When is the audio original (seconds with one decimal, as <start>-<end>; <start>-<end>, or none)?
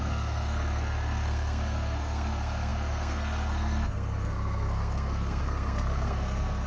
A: none